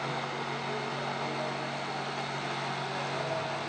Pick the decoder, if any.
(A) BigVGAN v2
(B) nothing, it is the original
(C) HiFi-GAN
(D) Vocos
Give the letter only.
B